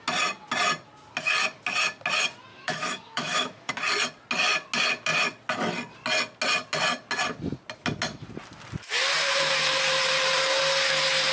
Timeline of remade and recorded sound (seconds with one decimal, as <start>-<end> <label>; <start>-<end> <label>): 0.0-2.5 recorded; 2.5-3.7 remade; 3.7-11.3 recorded